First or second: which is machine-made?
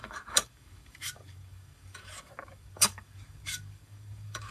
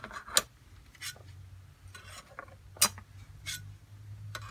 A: first